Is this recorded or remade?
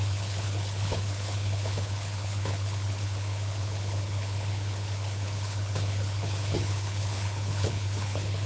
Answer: remade